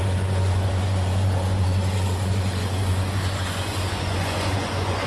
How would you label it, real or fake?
fake